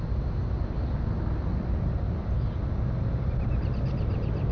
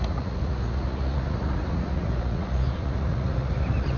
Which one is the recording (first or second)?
first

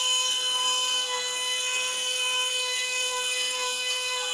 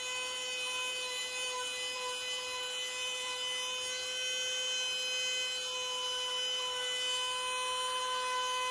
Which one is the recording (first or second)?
second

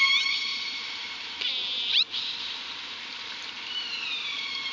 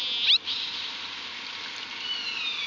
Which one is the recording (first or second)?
second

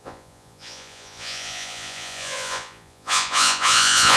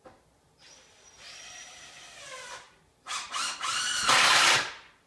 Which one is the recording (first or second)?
second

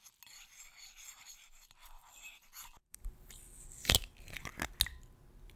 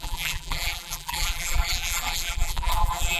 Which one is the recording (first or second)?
first